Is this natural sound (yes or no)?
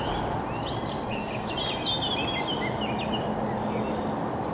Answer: yes